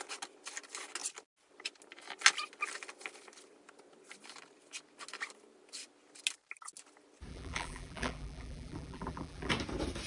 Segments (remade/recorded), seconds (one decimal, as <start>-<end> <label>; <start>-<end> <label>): 0.0-7.3 recorded; 7.3-9.5 remade; 9.5-10.1 recorded